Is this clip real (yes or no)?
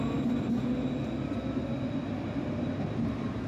yes